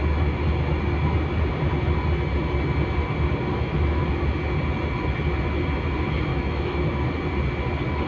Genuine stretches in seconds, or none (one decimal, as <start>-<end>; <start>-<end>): 0.0-3.5; 4.0-6.3; 7.2-8.1